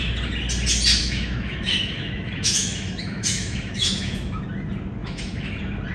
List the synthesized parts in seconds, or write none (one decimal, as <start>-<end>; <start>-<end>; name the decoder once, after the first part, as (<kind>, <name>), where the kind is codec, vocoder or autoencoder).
1.0-4.4 (autoencoder, DAC-VAE); 5.0-5.5